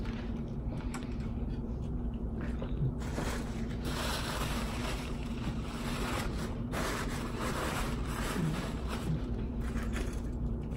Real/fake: fake